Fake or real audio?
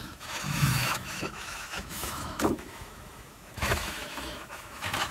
fake